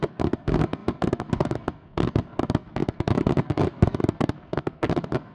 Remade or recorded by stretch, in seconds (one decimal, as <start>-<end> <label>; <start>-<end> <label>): 0.0-5.3 remade